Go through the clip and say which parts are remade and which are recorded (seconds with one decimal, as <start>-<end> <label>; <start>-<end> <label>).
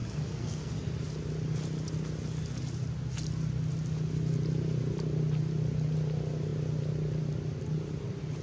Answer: 0.0-0.7 remade; 0.7-8.4 recorded